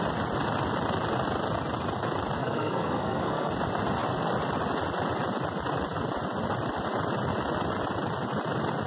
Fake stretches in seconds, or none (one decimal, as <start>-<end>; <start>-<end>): 2.4-3.5